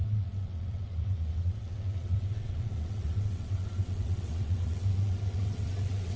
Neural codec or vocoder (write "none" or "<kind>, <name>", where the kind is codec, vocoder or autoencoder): vocoder, WaveNeXt